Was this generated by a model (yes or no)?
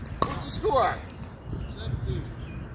no